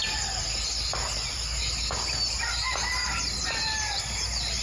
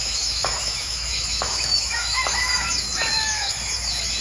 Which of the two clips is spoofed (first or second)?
second